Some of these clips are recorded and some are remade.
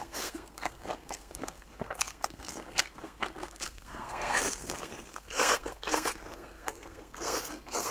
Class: remade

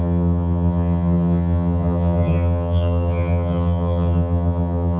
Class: remade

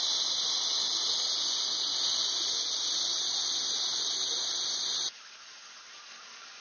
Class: recorded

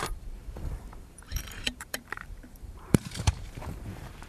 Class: remade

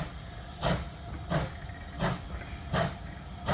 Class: recorded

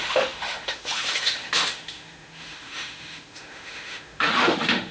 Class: remade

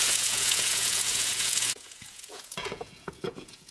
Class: remade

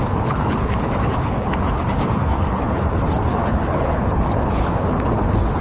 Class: remade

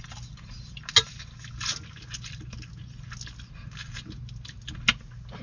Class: recorded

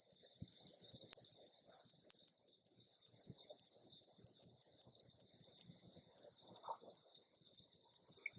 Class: recorded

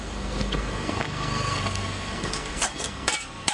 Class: remade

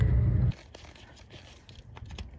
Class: recorded